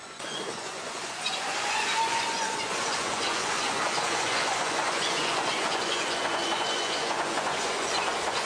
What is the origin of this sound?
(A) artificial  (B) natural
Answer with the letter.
A